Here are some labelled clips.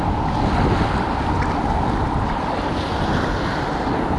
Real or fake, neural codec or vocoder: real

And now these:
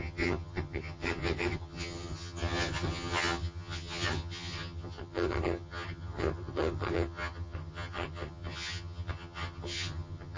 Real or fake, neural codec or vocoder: fake, vocoder, HiFi-GAN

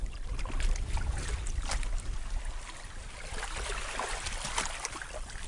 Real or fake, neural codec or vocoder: real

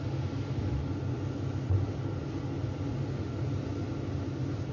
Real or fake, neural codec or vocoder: real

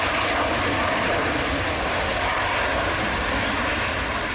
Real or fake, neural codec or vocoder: real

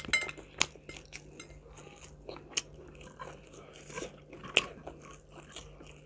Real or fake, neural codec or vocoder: real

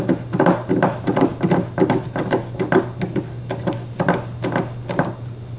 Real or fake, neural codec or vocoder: real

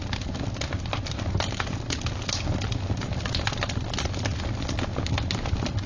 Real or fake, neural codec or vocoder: real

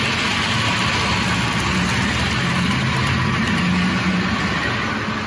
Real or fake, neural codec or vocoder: real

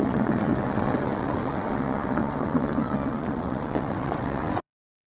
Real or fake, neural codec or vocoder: fake, vocoder, WaveNeXt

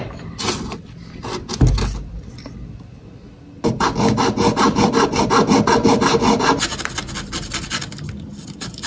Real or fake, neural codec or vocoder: real